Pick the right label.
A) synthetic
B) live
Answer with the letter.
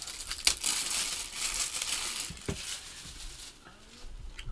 B